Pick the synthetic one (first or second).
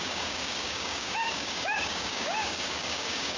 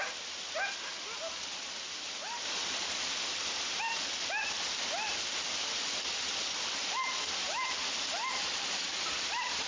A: first